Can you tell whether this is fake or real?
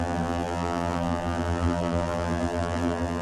fake